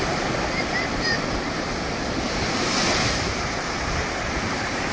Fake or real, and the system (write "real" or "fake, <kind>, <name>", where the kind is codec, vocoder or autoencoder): fake, vocoder, BigVGAN v2